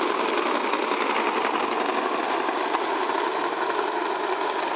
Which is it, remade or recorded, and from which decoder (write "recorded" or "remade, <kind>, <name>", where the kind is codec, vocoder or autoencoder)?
recorded